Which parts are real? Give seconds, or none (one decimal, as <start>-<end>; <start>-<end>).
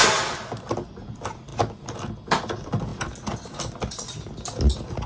0.0-5.1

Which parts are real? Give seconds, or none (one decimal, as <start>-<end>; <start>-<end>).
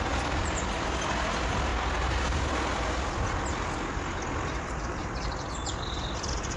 1.7-4.4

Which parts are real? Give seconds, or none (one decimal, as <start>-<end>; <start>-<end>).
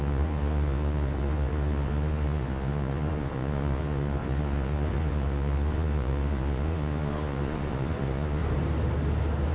8.4-9.5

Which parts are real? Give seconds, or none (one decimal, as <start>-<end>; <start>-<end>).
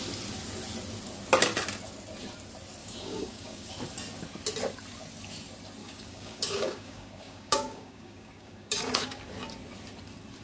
0.0-2.8; 3.7-5.8; 9.2-10.4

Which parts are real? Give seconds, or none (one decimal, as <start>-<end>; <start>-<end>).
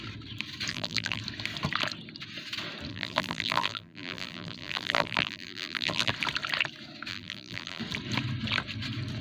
0.0-0.7; 1.2-2.9; 6.1-7.1; 7.8-9.2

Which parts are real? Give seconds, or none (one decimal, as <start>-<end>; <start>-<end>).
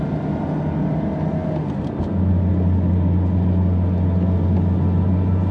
0.0-5.5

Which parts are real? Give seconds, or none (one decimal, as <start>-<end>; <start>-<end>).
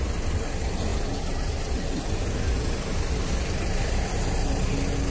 0.0-5.1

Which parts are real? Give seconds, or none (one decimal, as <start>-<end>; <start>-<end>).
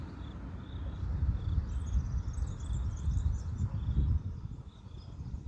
0.0-5.5